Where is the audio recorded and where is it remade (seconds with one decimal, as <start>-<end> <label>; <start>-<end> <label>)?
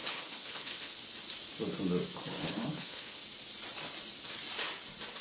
0.0-1.0 remade; 1.0-2.3 recorded; 2.3-3.2 remade; 3.2-5.2 recorded